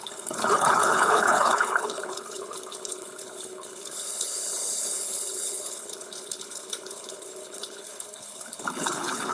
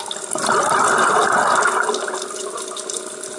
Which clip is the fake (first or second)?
first